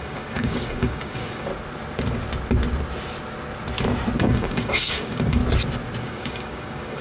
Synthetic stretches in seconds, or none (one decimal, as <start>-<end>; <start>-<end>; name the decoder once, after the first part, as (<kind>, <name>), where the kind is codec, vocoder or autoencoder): 0.0-1.5 (codec, DAC); 4.2-5.4; 6.0-7.0